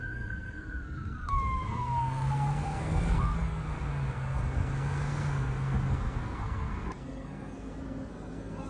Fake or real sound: fake